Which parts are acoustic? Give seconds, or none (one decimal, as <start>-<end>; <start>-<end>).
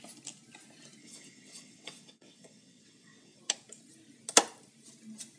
0.0-1.0; 3.4-5.4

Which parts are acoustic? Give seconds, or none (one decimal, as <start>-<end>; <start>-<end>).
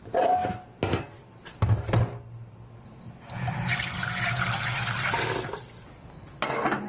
0.0-6.9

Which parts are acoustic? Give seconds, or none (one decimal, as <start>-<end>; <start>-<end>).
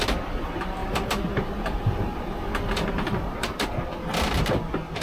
0.0-0.8; 3.8-5.0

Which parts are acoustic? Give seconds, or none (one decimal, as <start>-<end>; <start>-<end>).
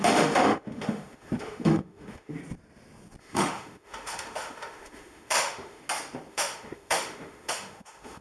2.4-3.2; 5.8-6.3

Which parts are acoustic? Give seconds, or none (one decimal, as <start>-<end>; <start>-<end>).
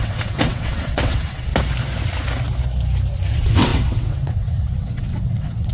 1.5-3.3